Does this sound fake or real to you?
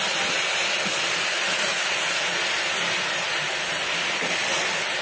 real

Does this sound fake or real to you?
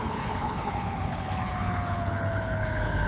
fake